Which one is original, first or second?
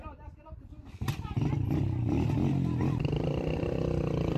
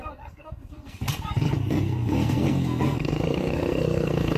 first